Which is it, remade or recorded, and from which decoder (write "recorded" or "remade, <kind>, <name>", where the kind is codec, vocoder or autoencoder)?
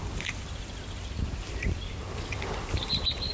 recorded